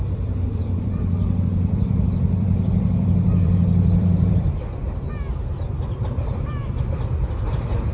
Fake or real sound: fake